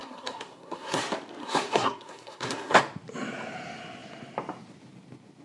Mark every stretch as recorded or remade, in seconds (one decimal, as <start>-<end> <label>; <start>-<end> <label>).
0.0-1.0 remade; 1.0-1.4 recorded; 1.4-2.8 remade; 2.8-5.4 recorded